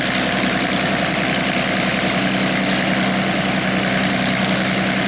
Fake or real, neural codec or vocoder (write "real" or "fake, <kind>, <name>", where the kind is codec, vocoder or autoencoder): real